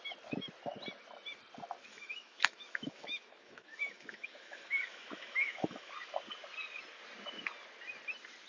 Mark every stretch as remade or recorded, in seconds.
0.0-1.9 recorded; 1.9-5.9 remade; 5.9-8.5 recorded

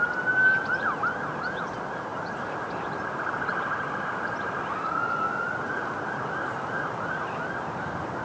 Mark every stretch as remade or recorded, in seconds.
0.0-2.1 recorded; 2.1-3.1 remade; 3.1-8.2 recorded

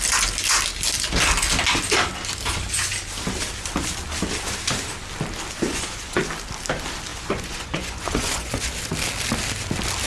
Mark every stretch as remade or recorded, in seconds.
0.0-5.7 recorded; 5.7-6.2 remade; 6.2-7.1 recorded; 7.1-8.6 remade; 8.6-10.1 recorded

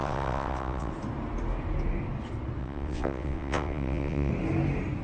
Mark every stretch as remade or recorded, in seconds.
0.0-0.9 remade; 0.9-2.6 recorded; 2.6-4.3 remade; 4.3-5.0 recorded

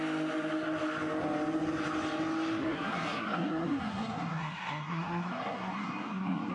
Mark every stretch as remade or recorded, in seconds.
0.0-2.6 recorded; 2.6-6.5 remade

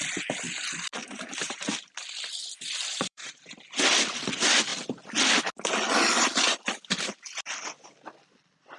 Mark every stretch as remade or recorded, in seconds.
0.0-1.0 recorded; 1.0-1.7 remade; 1.7-2.9 recorded; 2.9-3.4 remade; 3.4-8.8 recorded